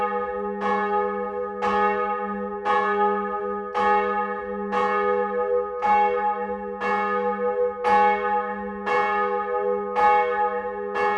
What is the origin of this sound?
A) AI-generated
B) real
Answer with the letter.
B